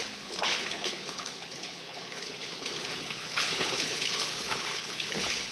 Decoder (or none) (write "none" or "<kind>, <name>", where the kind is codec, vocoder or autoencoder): codec, HILCodec